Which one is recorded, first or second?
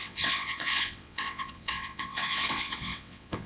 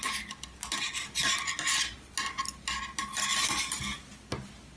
second